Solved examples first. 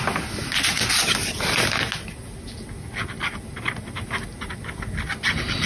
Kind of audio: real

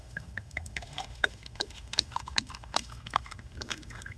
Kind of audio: fake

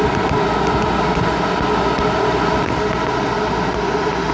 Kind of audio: real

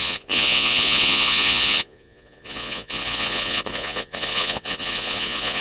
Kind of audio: fake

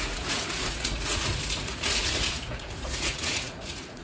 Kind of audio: fake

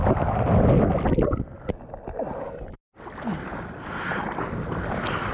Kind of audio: real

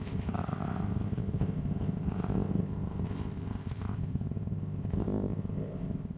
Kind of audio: fake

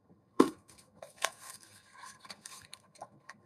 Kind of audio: fake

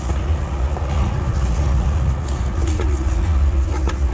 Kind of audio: fake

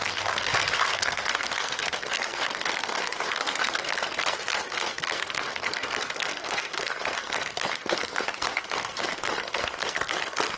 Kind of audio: fake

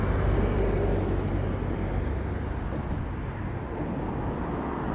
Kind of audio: real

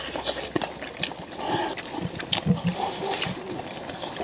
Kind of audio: real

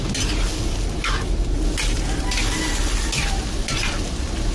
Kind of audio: real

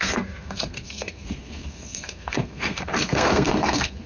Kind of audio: fake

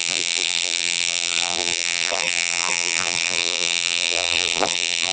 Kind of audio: fake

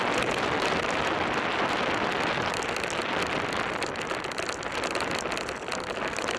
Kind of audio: real